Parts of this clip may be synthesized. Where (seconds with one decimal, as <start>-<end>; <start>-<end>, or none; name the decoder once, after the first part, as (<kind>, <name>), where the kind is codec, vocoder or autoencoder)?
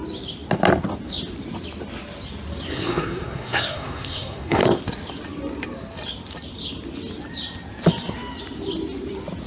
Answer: 2.7-4.6 (codec, SNAC)